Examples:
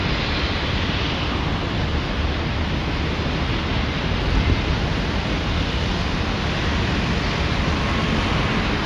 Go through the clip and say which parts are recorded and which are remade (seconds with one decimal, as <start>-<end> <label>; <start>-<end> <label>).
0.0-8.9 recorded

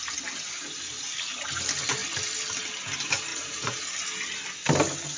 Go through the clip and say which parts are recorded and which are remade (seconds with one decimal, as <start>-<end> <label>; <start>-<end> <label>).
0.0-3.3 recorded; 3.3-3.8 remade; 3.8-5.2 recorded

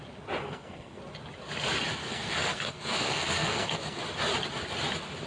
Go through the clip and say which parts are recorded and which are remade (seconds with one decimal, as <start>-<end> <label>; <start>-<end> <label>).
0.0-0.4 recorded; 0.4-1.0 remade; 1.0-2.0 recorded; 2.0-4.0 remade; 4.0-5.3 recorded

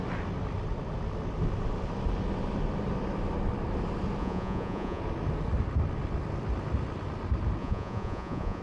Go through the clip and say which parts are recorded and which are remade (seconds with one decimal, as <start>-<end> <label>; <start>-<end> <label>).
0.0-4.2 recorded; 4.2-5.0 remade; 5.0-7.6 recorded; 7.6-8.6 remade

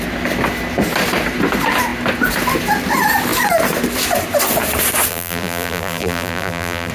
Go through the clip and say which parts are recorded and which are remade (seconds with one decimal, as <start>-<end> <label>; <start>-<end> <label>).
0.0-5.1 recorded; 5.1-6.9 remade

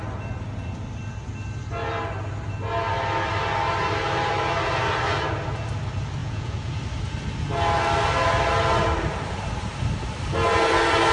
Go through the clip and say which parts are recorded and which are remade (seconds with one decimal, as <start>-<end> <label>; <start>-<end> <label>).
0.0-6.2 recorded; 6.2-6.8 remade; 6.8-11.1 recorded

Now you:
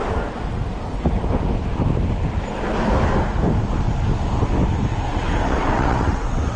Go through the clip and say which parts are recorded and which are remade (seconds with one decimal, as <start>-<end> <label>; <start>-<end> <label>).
0.0-5.1 recorded; 5.1-6.6 remade

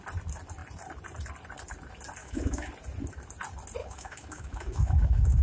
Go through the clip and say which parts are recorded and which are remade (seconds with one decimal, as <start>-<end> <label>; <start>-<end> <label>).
0.0-2.2 recorded; 2.2-2.7 remade; 2.7-3.8 recorded; 3.8-5.4 remade